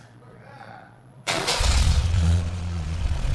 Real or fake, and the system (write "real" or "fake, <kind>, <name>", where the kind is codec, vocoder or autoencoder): fake, vocoder, Vocos